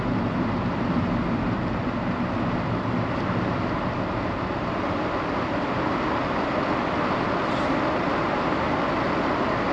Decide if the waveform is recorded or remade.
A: recorded